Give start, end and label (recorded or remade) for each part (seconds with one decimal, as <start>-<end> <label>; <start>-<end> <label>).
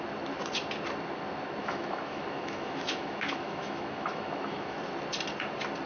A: 0.0-1.6 recorded; 1.6-4.8 remade; 4.8-5.9 recorded